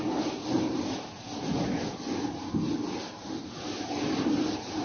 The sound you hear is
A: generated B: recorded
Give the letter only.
B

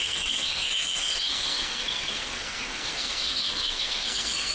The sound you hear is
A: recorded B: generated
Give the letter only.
B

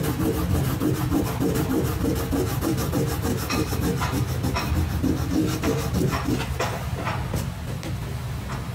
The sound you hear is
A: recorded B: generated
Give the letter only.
B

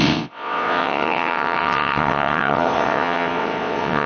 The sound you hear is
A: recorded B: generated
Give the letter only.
B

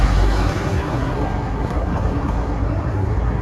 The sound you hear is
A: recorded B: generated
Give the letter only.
B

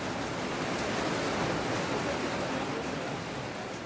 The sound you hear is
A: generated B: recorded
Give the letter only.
B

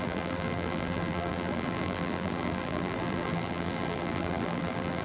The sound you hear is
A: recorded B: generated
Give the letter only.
B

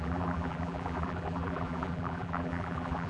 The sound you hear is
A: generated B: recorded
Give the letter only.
A